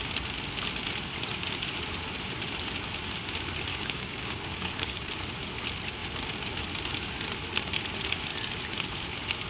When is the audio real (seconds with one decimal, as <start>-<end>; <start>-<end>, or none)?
0.0-3.7; 5.1-9.5

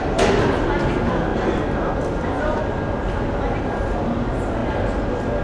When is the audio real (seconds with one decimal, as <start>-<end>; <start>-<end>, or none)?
0.0-5.4

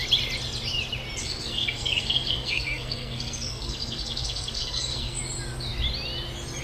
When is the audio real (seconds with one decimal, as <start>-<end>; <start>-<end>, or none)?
0.0-1.2; 5.2-6.6

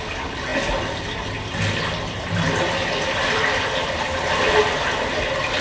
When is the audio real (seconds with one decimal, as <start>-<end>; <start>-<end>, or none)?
0.0-5.6

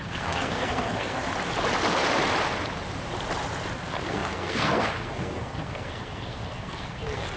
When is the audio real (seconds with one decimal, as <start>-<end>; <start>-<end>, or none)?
1.3-3.8

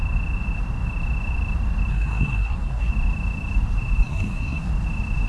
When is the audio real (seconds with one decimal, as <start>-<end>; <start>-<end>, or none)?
0.0-1.9; 2.9-4.0; 4.7-5.3